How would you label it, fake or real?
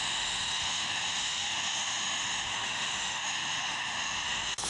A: fake